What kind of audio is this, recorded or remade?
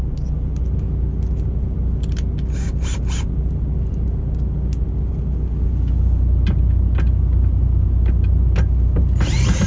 recorded